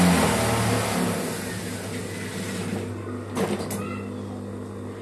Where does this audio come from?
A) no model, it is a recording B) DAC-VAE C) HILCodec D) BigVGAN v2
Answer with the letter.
A